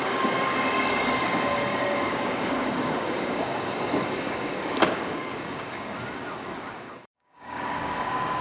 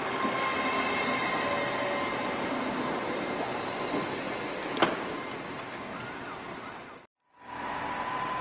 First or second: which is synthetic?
first